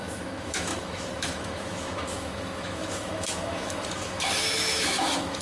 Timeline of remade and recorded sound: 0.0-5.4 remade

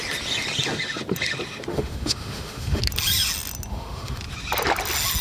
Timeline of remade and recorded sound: 0.0-1.7 recorded; 1.7-2.8 remade; 2.8-3.7 recorded; 3.7-4.2 remade; 4.2-5.2 recorded

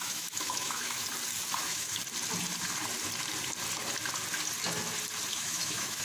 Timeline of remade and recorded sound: 0.0-1.0 remade; 1.0-1.6 recorded; 1.6-2.0 remade; 2.0-5.3 recorded; 5.3-6.0 remade

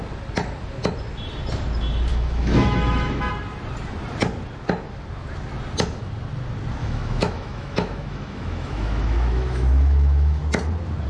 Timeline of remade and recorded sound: 0.0-2.1 recorded; 2.1-3.3 remade; 3.3-6.8 recorded; 6.8-10.4 remade; 10.4-11.1 recorded

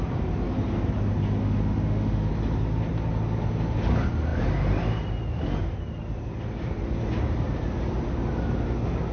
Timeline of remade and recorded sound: 0.0-1.4 recorded; 1.4-2.3 remade; 2.3-9.1 recorded

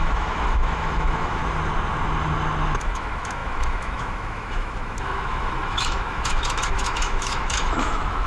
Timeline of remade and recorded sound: 0.0-1.4 remade; 1.4-2.8 recorded; 2.8-8.3 remade

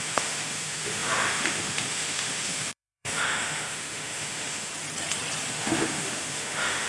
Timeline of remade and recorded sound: 0.0-4.7 remade; 4.7-5.5 recorded; 5.5-6.9 remade